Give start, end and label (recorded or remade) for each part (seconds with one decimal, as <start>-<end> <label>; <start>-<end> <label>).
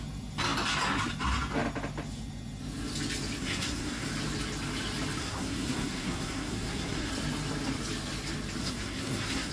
0.0-3.4 recorded; 3.4-4.1 remade; 4.1-5.2 recorded; 5.2-7.1 remade; 7.1-8.6 recorded; 8.6-9.5 remade